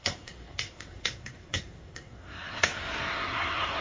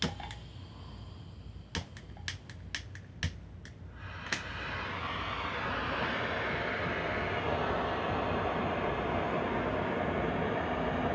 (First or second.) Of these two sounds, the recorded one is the second